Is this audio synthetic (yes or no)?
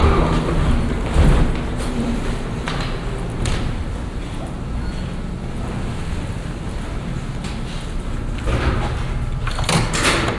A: no